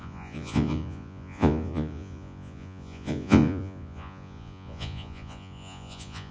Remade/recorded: remade